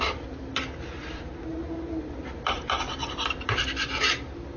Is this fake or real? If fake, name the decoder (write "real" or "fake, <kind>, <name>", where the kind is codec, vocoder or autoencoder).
real